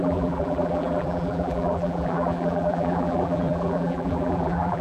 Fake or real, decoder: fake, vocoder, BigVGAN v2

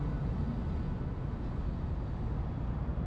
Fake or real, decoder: real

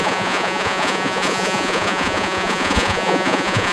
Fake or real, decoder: fake, vocoder, Vocos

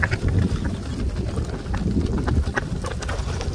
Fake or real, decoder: real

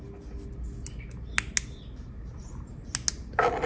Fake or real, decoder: real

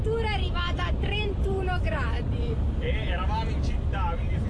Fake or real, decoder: fake, vocoder, BigVGAN v2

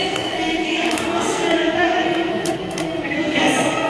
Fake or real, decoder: fake, codec, SNAC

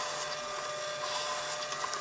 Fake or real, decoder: real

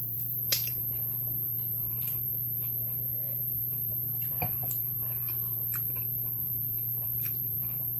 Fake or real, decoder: fake, vocoder, BigVGAN v2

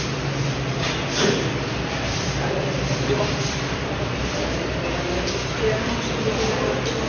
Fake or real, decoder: fake, vocoder, BigVGAN v2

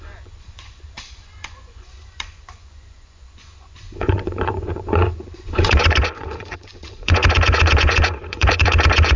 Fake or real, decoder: fake, vocoder, Vocos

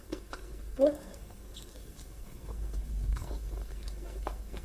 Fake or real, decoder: fake, codec, SNAC